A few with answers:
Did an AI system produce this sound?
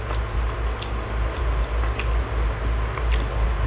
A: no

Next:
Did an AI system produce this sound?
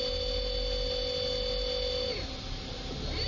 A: no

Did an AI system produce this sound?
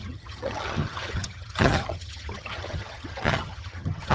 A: yes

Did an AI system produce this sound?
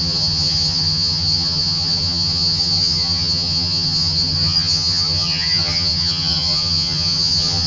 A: yes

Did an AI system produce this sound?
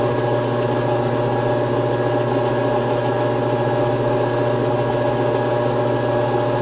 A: no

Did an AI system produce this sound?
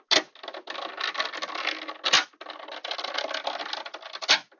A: no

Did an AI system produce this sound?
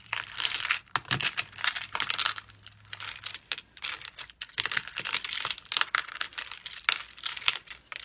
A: no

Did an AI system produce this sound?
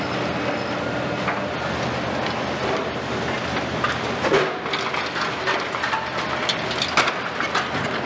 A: no